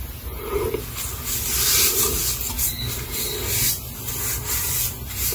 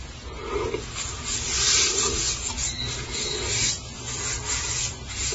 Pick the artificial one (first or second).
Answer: first